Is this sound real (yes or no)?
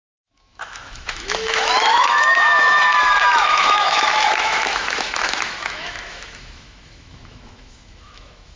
no